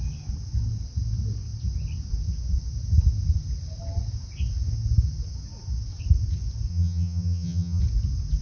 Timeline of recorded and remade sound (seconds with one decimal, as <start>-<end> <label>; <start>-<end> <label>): 0.0-6.7 recorded; 6.7-7.8 remade; 7.8-8.4 recorded